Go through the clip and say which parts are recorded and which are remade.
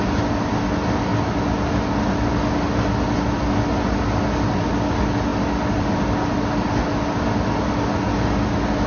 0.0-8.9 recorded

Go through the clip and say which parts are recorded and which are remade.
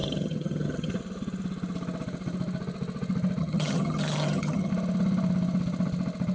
0.0-0.9 remade; 0.9-3.4 recorded; 3.4-4.7 remade; 4.7-6.3 recorded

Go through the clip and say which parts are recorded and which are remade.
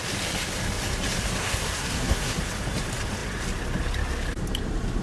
0.0-1.4 recorded; 1.4-2.4 remade; 2.4-5.0 recorded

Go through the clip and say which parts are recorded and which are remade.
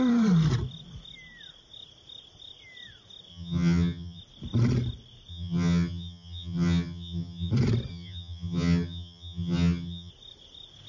0.0-3.3 recorded; 3.3-4.2 remade; 4.2-5.3 recorded; 5.3-7.5 remade; 7.5-7.9 recorded; 7.9-10.1 remade; 10.1-10.9 recorded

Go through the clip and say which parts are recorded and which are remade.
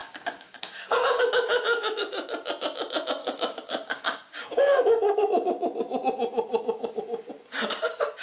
0.0-1.3 remade; 1.3-3.2 recorded; 3.2-5.2 remade; 5.2-6.5 recorded; 6.5-7.0 remade; 7.0-8.2 recorded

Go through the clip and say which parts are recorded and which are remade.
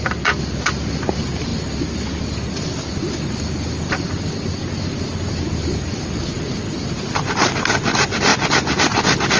0.0-9.4 recorded